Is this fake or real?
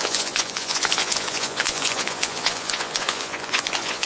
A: fake